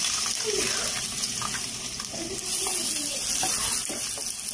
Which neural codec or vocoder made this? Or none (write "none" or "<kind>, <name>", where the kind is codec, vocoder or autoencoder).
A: none